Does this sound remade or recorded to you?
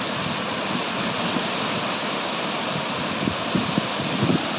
recorded